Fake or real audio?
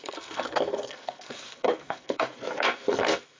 fake